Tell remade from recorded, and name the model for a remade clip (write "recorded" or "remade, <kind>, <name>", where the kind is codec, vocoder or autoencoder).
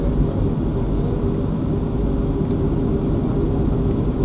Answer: recorded